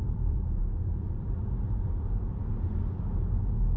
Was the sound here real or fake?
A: fake